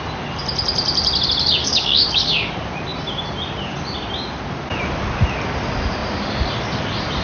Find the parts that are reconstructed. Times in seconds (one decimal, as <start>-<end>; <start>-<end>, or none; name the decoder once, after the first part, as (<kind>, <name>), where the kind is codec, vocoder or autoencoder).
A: 1.6-2.5 (codec, DAC)